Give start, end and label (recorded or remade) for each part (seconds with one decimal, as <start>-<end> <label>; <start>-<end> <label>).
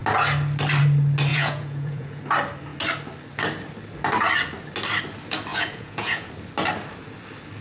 0.0-1.3 recorded; 1.3-2.2 remade; 2.2-5.5 recorded; 5.5-6.3 remade; 6.3-7.6 recorded